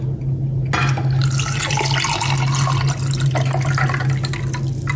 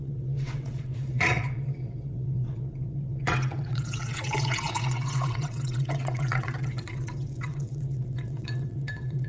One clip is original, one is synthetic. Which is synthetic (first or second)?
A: second